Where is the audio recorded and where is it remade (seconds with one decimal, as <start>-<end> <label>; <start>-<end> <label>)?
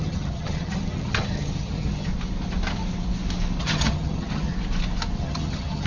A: 0.0-2.1 remade; 2.1-3.6 recorded; 3.6-4.5 remade; 4.5-5.2 recorded; 5.2-5.9 remade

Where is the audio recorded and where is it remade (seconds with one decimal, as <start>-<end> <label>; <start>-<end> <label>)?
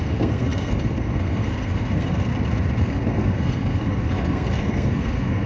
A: 0.0-2.3 remade; 2.3-2.8 recorded; 2.8-5.5 remade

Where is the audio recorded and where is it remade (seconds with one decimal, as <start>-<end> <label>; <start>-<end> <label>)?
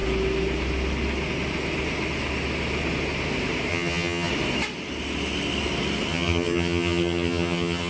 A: 0.0-3.7 recorded; 3.7-4.3 remade; 4.3-6.1 recorded; 6.1-7.9 remade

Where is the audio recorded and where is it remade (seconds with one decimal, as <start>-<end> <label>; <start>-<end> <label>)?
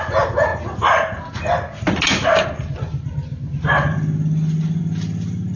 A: 0.0-5.6 recorded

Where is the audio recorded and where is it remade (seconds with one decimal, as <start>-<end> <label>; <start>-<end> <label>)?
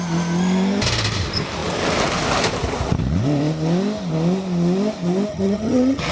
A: 0.0-5.3 recorded; 5.3-6.1 remade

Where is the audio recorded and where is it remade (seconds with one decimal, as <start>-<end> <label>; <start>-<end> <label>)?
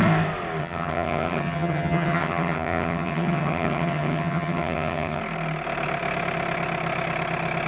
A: 0.0-0.6 recorded; 0.6-5.2 remade; 5.2-7.7 recorded